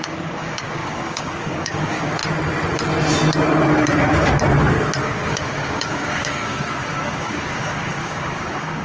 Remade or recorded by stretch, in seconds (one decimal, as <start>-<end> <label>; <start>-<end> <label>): 0.0-2.2 remade; 2.2-5.0 recorded; 5.0-8.8 remade